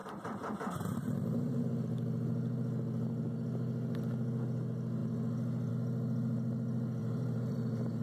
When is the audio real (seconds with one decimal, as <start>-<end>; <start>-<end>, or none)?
1.6-7.0